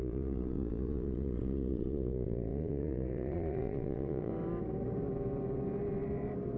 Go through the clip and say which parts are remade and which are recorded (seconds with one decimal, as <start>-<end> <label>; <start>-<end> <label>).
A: 0.0-4.3 remade; 4.3-6.6 recorded